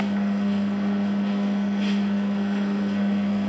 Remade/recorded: remade